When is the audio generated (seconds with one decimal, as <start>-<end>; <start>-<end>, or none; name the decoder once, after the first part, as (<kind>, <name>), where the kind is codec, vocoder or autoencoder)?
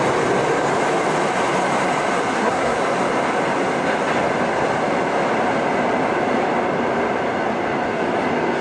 2.3-2.8 (codec, SNAC)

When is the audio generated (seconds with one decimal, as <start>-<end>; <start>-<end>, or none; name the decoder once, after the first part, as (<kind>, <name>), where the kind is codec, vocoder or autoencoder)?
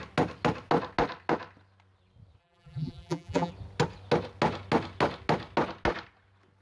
2.4-3.5 (vocoder, BigVGAN v2)